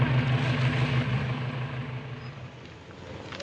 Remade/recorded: recorded